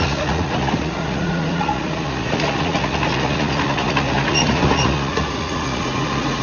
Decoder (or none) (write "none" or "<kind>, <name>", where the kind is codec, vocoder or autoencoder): vocoder, Vocos